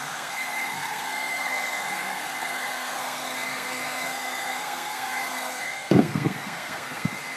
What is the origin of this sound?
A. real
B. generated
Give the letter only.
B